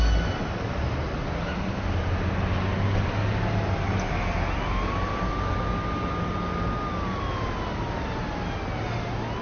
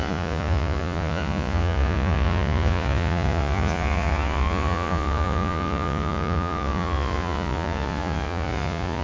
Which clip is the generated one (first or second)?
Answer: second